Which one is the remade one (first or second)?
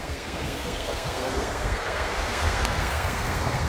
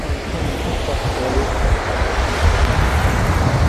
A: first